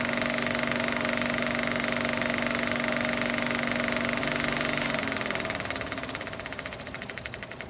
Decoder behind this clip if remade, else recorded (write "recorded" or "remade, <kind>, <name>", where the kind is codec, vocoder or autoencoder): recorded